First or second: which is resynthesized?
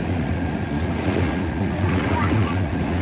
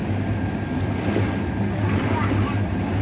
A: first